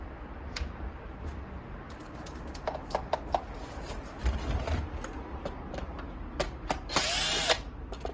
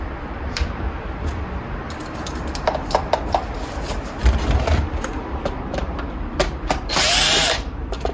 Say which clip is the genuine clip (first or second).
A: first